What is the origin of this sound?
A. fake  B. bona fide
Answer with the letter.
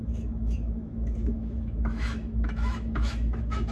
A